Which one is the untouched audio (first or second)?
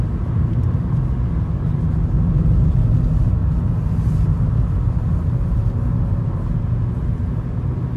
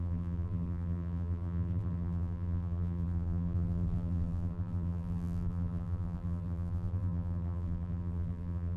first